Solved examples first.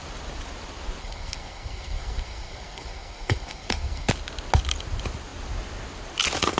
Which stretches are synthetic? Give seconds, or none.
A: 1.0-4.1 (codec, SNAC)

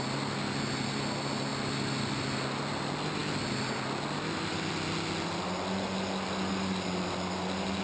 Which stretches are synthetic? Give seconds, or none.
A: none

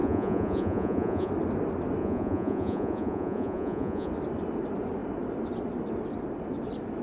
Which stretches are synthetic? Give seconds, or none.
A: 0.0-1.3 (vocoder, Vocos); 2.0-4.1